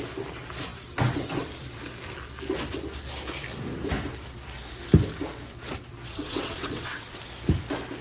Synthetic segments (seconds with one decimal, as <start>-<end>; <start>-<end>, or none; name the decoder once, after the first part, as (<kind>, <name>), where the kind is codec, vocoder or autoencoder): 6.1-7.2 (vocoder, WaveNeXt)